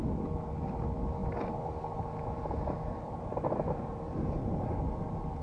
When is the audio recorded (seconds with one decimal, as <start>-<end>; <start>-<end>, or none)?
0.0-5.4